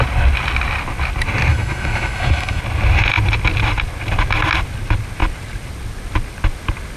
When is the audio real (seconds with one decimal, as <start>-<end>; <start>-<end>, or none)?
0.0-1.5; 2.6-7.0